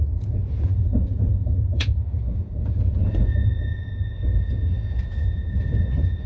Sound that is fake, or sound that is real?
fake